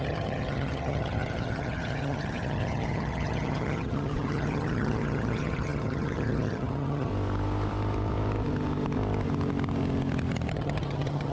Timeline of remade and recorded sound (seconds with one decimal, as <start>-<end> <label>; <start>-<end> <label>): 0.0-7.1 remade; 7.1-10.5 recorded; 10.5-11.3 remade

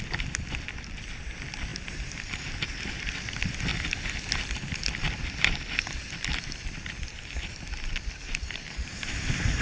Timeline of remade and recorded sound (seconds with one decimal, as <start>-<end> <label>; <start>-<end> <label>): 0.0-9.6 recorded

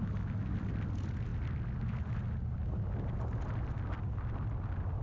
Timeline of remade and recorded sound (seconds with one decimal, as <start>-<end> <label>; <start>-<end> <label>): 0.0-5.0 recorded

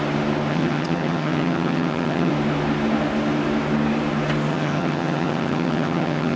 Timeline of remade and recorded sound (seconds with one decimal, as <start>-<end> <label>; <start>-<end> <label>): 0.0-0.5 recorded; 0.5-2.3 remade; 2.3-4.5 recorded; 4.5-6.4 remade

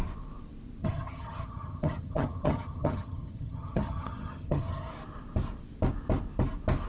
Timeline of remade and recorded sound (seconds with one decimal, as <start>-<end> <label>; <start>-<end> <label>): 0.0-0.8 recorded; 0.8-4.9 remade; 4.9-6.9 recorded